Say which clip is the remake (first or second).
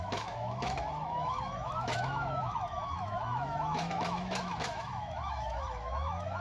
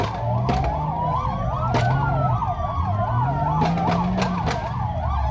first